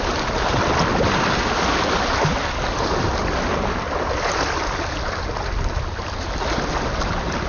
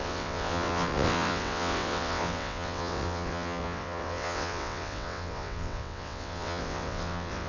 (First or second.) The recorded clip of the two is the first